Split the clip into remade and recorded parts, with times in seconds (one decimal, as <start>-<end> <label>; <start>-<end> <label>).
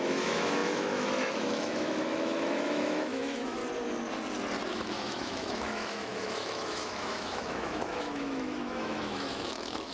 0.0-3.6 remade; 3.6-4.7 recorded; 4.7-9.9 remade